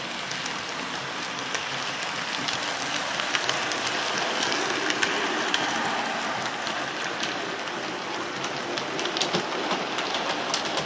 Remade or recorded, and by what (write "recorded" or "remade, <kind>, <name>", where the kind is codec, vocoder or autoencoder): recorded